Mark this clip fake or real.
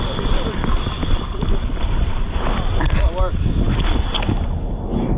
real